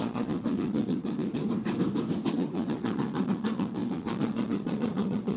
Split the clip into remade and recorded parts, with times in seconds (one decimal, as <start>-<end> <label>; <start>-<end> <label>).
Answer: 0.0-1.4 remade; 1.4-2.3 recorded; 2.3-5.4 remade